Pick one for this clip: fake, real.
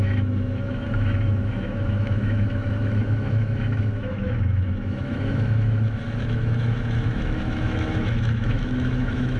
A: fake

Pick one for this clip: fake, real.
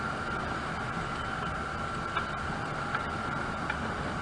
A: real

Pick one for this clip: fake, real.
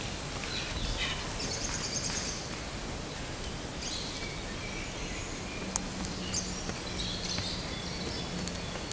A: real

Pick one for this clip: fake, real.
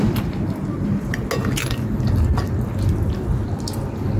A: real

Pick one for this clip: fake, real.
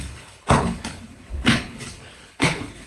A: fake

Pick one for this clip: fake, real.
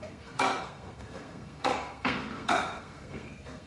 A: fake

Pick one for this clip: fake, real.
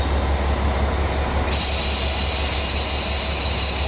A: real